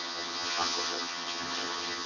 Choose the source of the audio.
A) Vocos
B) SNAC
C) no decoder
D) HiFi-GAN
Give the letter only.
D